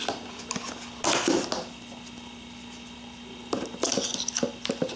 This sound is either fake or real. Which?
real